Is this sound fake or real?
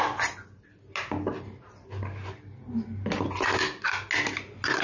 real